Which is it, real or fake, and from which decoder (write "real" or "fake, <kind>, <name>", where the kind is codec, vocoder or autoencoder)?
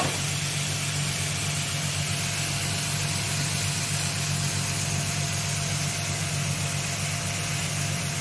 real